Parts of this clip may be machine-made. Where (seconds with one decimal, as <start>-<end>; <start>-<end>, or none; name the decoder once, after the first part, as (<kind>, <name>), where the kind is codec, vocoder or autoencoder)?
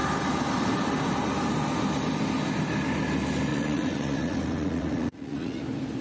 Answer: 3.5-5.6 (vocoder, Vocos)